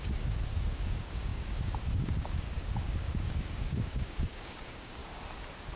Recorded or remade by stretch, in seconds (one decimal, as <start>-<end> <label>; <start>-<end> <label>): 0.0-5.0 remade; 5.0-5.8 recorded